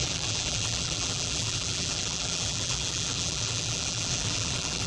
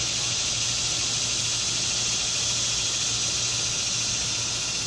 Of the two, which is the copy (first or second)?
first